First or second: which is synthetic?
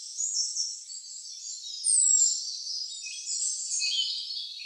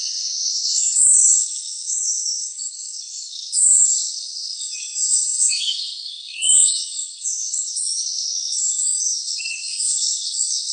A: second